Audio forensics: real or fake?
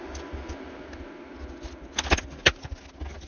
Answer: real